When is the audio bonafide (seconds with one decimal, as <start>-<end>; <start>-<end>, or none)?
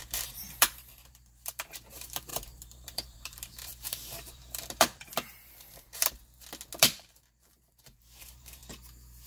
6.2-6.8; 8.6-9.3